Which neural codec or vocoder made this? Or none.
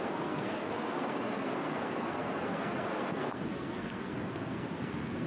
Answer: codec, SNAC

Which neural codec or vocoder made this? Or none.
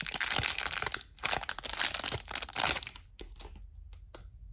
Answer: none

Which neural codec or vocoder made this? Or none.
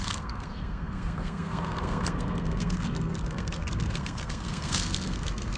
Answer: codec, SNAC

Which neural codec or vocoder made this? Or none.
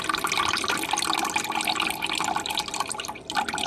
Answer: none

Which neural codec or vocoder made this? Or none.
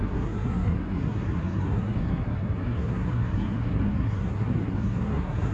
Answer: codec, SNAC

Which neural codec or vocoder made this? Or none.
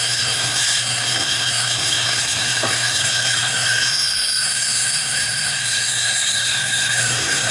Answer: codec, SNAC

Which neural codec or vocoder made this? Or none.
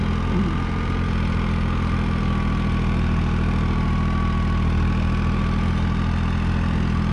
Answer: none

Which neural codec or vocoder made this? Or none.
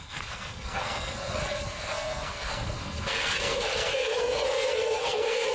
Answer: codec, SNAC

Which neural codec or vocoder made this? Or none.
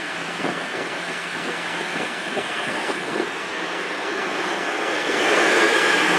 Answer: codec, SNAC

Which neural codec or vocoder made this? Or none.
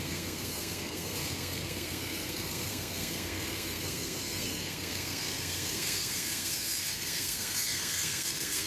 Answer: codec, SNAC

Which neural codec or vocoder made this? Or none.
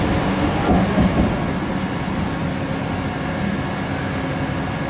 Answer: none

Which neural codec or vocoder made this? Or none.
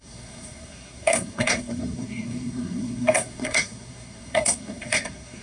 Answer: codec, SNAC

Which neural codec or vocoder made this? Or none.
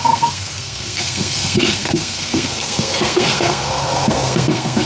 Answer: codec, SNAC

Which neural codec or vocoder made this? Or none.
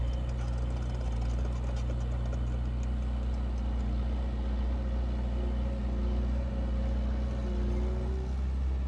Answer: none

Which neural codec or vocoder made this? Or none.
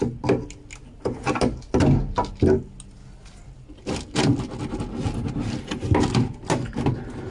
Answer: none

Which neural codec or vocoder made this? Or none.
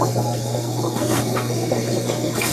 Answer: codec, SNAC